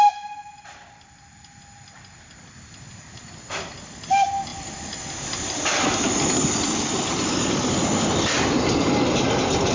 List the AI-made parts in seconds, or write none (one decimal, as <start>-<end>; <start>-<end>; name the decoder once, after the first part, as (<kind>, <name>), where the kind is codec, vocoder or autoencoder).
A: none